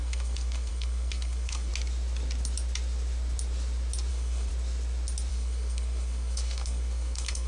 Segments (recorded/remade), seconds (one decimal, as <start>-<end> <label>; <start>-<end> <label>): 0.0-1.7 remade; 1.7-4.1 recorded; 4.1-4.5 remade; 4.5-5.3 recorded; 5.3-7.5 remade